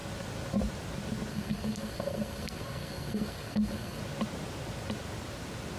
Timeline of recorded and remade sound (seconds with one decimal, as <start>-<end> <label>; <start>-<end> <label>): 0.0-1.3 recorded; 1.3-4.0 remade; 4.0-5.8 recorded